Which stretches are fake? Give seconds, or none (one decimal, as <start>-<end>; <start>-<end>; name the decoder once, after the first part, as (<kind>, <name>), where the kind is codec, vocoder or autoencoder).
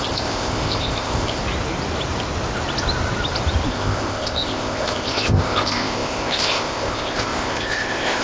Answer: 0.0-1.4 (codec, ZipCodec); 3.7-8.2